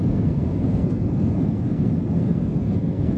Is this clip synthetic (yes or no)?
yes